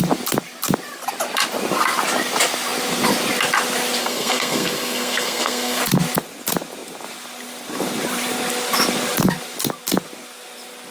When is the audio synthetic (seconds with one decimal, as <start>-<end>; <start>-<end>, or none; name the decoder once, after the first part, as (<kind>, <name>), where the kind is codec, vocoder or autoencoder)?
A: 4.0-5.8 (codec, SNAC)